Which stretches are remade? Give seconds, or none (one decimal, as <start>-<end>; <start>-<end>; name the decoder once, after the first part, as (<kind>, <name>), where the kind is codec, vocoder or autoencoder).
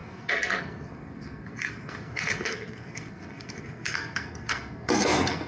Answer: 0.0-5.5 (codec, SNAC)